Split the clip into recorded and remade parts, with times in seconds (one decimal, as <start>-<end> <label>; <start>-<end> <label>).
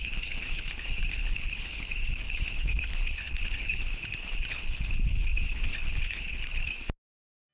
0.0-3.9 remade; 3.9-4.5 recorded; 4.5-6.7 remade; 6.7-7.5 recorded